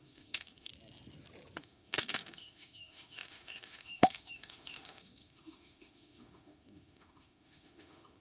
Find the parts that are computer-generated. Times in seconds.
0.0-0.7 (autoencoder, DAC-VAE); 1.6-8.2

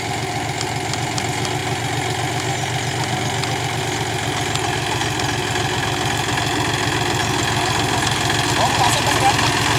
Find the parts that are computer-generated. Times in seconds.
none

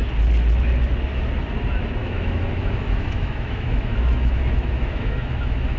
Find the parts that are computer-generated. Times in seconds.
2.0-5.8 (autoencoder, DAC-VAE)

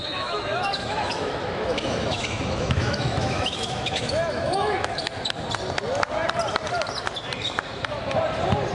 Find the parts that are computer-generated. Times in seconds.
0.0-5.0 (autoencoder, DAC-VAE)

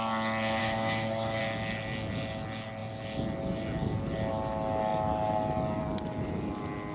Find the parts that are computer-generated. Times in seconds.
0.6-1.4 (autoencoder, DAC-VAE)

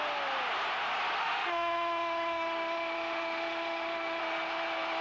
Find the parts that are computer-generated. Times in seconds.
1.2-4.2 (autoencoder, DAC-VAE)

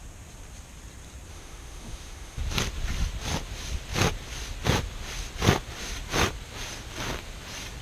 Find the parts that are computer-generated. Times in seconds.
1.3-2.4 (autoencoder, DAC-VAE)